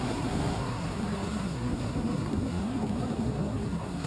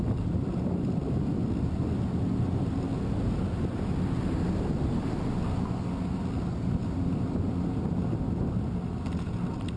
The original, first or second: second